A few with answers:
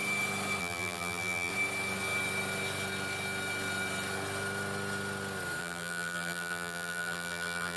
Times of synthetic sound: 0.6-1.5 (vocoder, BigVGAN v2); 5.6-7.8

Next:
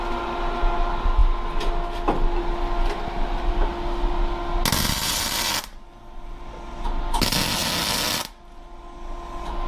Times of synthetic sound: none